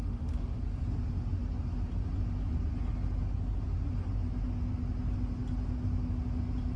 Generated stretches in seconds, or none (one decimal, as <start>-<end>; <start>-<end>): 0.0-0.6